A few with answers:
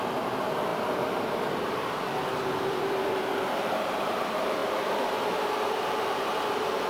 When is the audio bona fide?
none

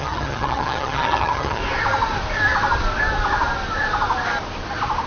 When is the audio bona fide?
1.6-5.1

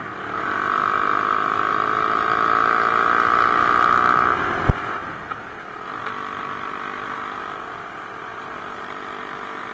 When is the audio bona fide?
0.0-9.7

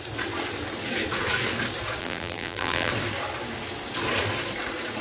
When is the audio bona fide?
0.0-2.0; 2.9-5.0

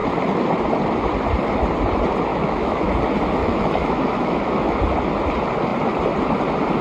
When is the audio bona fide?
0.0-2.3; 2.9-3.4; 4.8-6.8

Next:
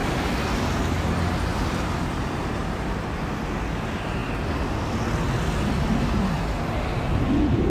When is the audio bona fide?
0.0-7.7

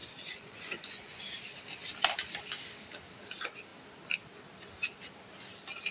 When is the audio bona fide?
1.2-5.9

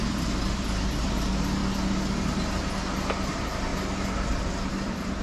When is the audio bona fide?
1.6-3.3; 3.7-4.7